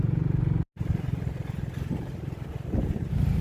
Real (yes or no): no